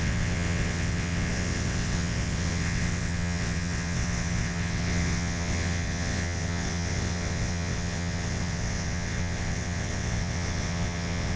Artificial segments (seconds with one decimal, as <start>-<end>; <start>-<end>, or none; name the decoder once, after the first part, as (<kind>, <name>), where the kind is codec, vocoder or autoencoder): 0.0-11.4 (vocoder, WaveNeXt)